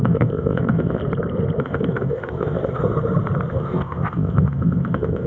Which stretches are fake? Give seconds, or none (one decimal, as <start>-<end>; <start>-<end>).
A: 0.0-1.0; 1.6-2.8; 3.5-5.3

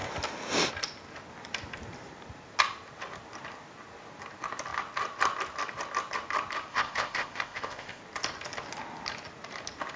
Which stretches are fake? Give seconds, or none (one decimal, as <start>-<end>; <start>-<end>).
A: 6.7-8.0

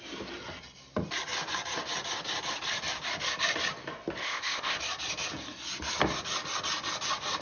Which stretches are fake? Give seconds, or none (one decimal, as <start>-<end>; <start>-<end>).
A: 4.2-4.8

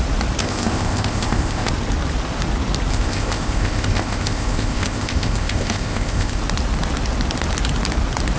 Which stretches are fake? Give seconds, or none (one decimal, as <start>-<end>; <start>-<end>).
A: 0.4-1.7; 2.9-6.4

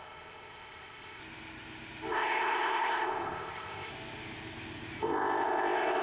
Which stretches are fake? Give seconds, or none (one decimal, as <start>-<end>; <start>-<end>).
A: 0.0-1.2; 2.1-3.9; 5.0-6.0